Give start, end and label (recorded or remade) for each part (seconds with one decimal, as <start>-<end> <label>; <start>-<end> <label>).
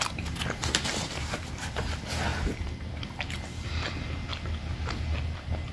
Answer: 0.0-0.6 recorded; 0.6-1.3 remade; 1.3-2.3 recorded; 2.3-2.9 remade; 2.9-5.7 recorded